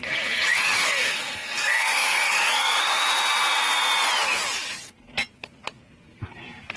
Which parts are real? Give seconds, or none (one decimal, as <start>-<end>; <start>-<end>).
0.0-0.8; 3.0-6.8